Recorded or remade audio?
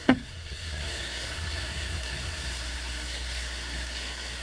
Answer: remade